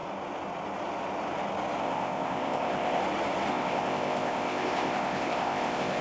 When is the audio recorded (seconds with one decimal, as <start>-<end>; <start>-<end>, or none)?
0.0-1.8; 3.0-3.5